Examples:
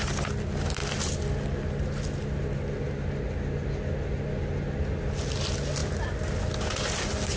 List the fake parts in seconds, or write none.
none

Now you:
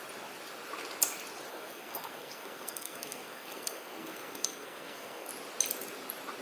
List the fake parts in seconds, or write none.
1.5-5.3 (codec, SNAC)

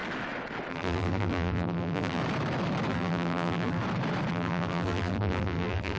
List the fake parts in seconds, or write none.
0.7-2.2 (vocoder, BigVGAN v2); 2.9-3.8; 4.3-6.0